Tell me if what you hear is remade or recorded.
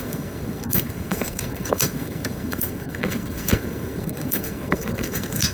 remade